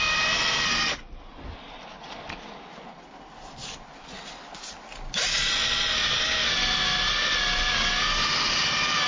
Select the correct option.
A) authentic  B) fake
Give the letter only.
A